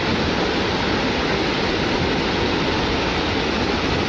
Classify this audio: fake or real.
real